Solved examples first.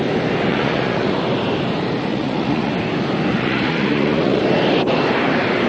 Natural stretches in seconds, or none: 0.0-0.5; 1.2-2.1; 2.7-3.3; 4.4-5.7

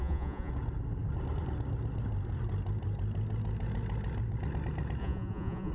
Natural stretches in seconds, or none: 0.5-5.0

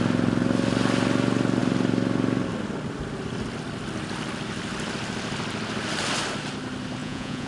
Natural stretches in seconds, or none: 0.0-7.0

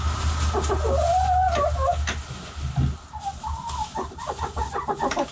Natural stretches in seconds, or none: 0.0-5.3

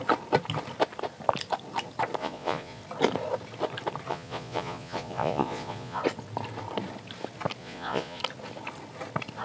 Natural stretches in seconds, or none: 0.0-2.2; 2.8-4.1; 6.0-7.6; 8.2-9.4

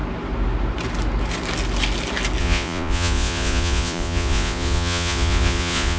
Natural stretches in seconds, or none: 0.0-2.4

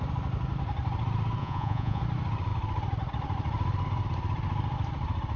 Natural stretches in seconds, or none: 0.0-1.4; 2.0-5.4